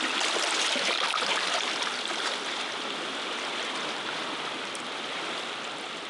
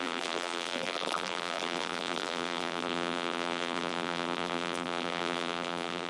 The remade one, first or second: second